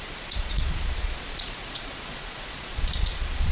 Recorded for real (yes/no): no